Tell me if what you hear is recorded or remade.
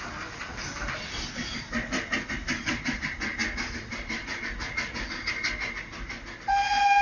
recorded